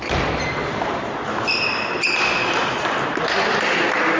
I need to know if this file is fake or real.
real